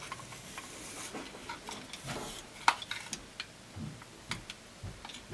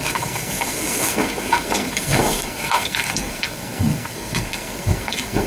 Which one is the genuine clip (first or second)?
first